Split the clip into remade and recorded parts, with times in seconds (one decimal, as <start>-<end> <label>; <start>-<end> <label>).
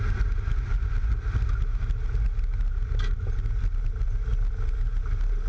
0.0-5.5 recorded